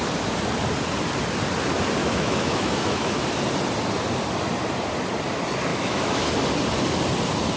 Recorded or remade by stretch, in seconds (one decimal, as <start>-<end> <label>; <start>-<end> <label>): 0.0-2.0 recorded; 2.0-3.2 remade; 3.2-5.7 recorded; 5.7-6.3 remade; 6.3-7.6 recorded